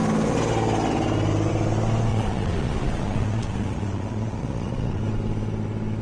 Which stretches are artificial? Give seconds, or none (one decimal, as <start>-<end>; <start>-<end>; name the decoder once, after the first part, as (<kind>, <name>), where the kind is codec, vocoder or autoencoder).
2.1-5.0 (vocoder, Vocos)